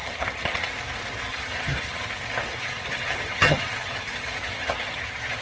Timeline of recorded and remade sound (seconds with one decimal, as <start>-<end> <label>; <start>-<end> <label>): 0.0-0.7 remade; 0.7-1.3 recorded; 1.3-2.1 remade; 2.1-2.5 recorded; 2.5-5.4 remade